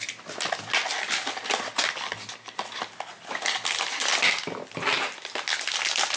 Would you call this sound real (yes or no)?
yes